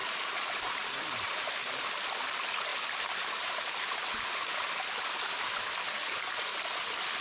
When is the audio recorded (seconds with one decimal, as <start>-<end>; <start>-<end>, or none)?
1.5-2.7; 4.7-7.2